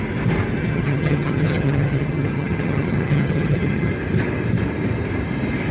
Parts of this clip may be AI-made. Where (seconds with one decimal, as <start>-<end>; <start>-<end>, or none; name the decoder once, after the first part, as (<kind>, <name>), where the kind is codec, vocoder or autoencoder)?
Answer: 0.6-3.9 (vocoder, HiFi-GAN)